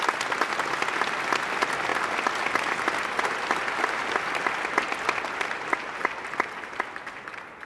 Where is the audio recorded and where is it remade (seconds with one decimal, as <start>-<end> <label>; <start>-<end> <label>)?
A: 0.0-7.7 recorded